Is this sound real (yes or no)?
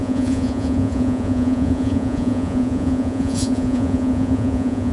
no